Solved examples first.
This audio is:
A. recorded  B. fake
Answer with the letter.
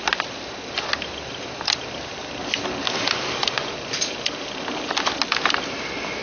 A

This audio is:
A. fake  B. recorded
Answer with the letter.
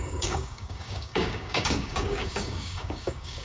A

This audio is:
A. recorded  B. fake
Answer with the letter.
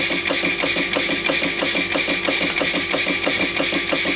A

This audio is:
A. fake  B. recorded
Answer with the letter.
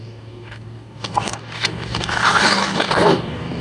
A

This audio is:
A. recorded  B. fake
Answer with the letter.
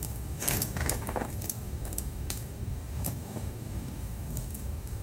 B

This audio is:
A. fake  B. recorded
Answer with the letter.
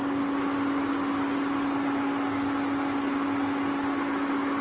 B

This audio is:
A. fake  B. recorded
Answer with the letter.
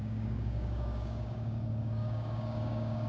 A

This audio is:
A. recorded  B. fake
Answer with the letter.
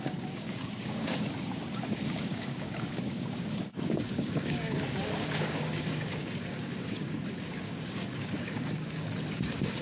B